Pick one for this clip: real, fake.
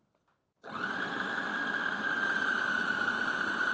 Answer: real